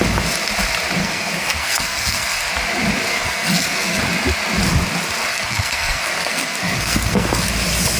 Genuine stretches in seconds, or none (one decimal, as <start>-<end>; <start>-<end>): 0.0-1.0; 2.5-3.1; 4.0-5.3; 7.5-8.0